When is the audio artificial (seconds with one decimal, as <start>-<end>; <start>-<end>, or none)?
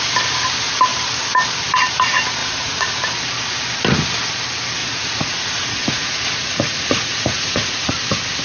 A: 2.4-3.1; 4.8-7.9